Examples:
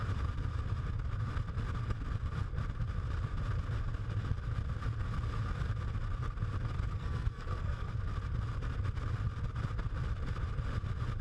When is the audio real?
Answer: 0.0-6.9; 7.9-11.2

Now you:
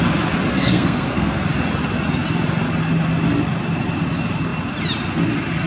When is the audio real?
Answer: 0.0-0.5; 1.4-5.7

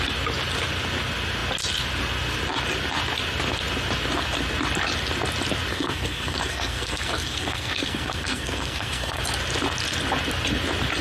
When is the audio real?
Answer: 0.0-5.7; 9.2-11.0

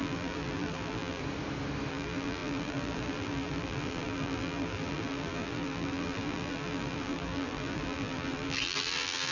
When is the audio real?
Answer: 1.2-1.9